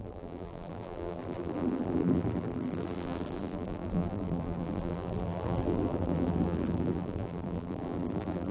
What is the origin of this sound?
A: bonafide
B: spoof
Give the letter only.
B